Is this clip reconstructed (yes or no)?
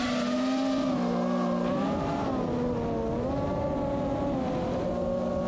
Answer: no